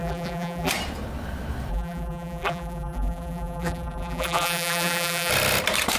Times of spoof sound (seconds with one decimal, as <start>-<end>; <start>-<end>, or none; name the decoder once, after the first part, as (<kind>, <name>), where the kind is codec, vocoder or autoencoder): 0.0-0.7 (vocoder, BigVGAN v2); 1.7-5.3